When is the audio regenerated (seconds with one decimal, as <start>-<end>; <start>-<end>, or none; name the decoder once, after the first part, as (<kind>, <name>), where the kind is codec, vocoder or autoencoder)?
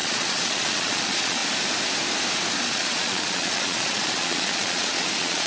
0.0-1.4 (vocoder, Vocos); 2.7-5.5